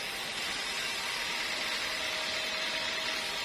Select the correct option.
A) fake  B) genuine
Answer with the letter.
B